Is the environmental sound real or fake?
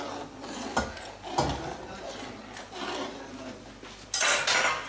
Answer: real